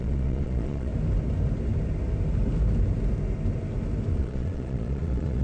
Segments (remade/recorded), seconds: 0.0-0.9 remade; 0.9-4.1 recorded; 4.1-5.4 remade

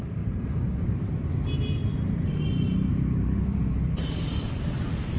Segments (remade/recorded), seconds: 0.0-5.2 remade